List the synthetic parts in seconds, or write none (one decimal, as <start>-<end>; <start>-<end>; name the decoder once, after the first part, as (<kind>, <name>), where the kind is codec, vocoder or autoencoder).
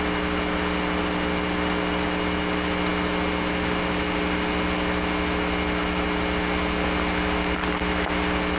none